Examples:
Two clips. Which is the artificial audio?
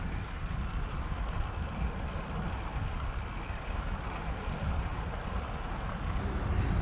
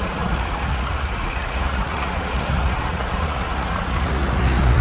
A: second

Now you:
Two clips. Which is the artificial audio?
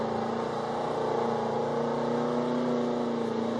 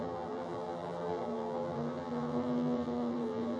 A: second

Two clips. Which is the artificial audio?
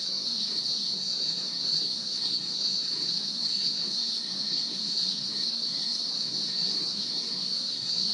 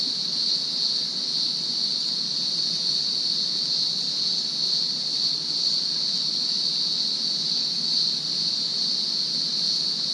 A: first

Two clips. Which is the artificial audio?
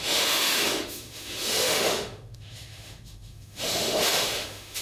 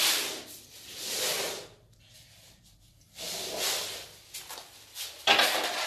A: first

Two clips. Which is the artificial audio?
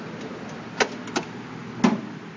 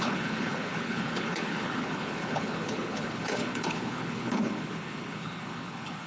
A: second